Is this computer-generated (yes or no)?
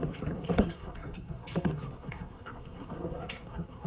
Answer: yes